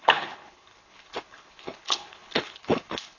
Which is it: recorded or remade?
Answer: remade